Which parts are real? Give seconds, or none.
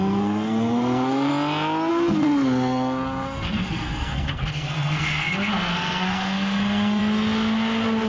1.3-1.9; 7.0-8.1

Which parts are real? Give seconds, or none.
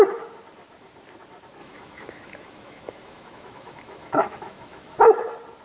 0.0-1.6; 5.0-5.6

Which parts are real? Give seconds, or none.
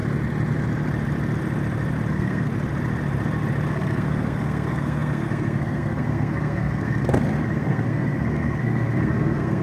0.0-2.1; 2.5-3.7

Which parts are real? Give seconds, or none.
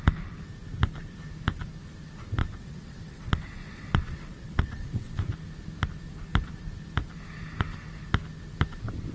0.0-2.4; 5.2-9.1